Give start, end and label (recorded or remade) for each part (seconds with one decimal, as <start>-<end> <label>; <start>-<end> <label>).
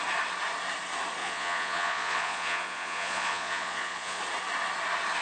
0.0-1.2 recorded; 1.2-4.2 remade; 4.2-5.2 recorded